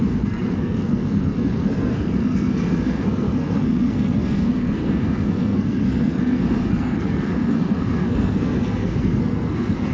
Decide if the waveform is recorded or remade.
remade